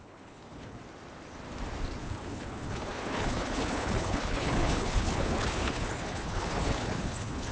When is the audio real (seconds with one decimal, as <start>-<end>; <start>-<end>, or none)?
0.8-2.0